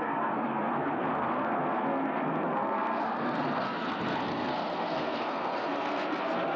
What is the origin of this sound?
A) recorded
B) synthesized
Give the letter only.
B